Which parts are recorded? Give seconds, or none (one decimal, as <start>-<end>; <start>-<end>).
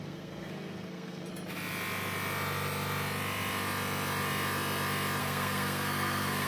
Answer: 1.3-5.2